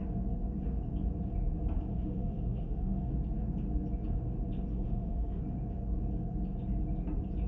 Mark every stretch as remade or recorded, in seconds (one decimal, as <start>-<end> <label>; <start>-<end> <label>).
0.0-1.9 recorded; 1.9-3.1 remade; 3.1-4.7 recorded; 4.7-5.4 remade; 5.4-7.5 recorded